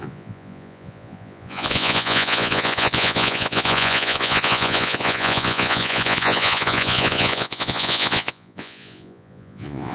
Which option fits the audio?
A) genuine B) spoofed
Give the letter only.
B